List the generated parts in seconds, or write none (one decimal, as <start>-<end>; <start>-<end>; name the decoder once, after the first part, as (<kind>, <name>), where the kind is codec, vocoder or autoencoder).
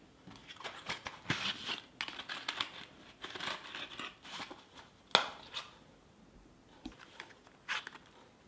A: 0.4-1.1 (vocoder, Vocos)